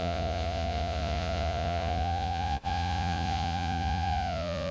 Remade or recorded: remade